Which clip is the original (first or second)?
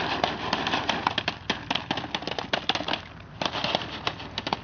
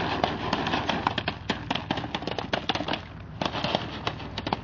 second